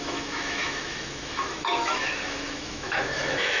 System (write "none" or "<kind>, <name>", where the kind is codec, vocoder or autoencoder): autoencoder, DAC-VAE